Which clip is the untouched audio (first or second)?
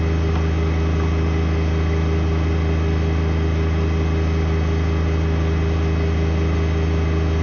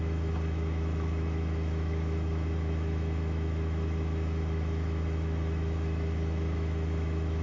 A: first